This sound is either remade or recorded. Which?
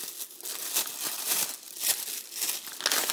recorded